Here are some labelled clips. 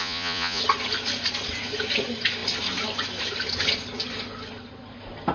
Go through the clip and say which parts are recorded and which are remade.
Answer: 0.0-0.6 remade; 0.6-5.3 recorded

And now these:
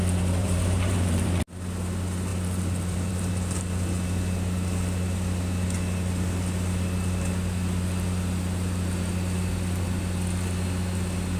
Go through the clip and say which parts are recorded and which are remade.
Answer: 0.0-0.4 recorded; 0.4-1.4 remade; 1.4-2.3 recorded; 2.3-3.3 remade; 3.3-11.4 recorded

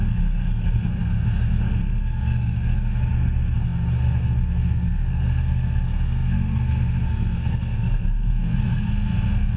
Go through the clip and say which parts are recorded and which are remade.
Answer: 0.0-9.6 remade

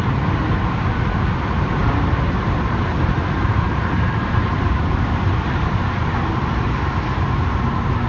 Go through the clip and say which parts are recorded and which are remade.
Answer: 0.0-1.8 recorded; 1.8-5.7 remade; 5.7-8.1 recorded

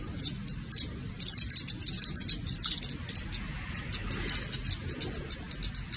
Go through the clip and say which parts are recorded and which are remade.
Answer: 0.0-6.0 recorded

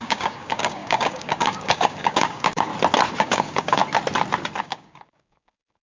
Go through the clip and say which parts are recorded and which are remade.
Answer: 0.0-2.7 remade; 2.7-3.2 recorded; 3.2-3.8 remade; 3.8-4.6 recorded; 4.6-5.9 remade